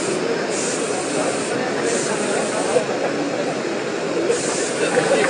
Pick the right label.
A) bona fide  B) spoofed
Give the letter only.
A